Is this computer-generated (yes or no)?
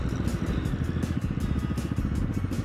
no